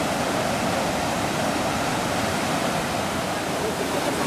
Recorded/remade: recorded